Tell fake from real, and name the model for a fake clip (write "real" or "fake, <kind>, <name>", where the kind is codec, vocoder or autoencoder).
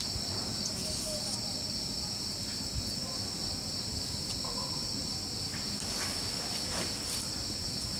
real